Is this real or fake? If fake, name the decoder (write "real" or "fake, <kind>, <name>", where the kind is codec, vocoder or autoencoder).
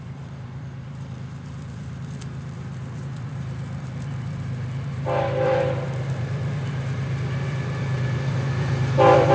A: fake, vocoder, BigVGAN v2